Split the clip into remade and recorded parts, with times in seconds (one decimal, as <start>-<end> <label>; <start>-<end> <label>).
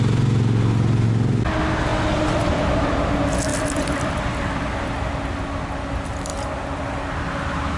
0.0-1.9 recorded; 1.9-2.6 remade; 2.6-3.5 recorded; 3.5-5.1 remade; 5.1-7.8 recorded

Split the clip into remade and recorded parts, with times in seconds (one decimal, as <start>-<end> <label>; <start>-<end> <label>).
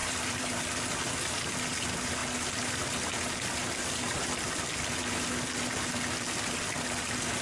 0.0-0.6 remade; 0.6-7.4 recorded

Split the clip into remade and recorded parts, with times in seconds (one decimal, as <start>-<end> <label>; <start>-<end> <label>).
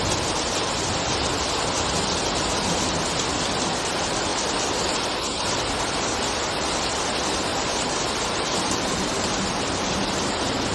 0.0-7.5 recorded; 7.5-9.9 remade; 9.9-10.7 recorded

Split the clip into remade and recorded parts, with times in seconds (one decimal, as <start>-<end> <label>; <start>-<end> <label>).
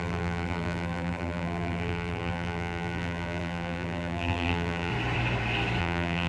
0.0-4.9 remade; 4.9-5.8 recorded; 5.8-6.3 remade